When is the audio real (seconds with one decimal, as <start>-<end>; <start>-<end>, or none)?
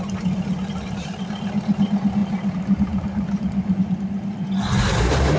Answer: 0.0-2.2; 3.8-5.4